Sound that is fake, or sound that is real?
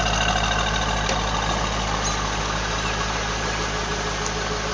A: real